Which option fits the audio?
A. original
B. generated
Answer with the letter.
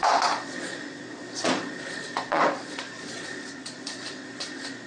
B